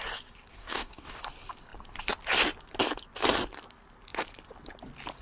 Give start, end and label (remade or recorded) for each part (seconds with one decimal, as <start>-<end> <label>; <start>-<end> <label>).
0.0-0.5 recorded; 0.5-1.2 remade; 1.2-5.2 recorded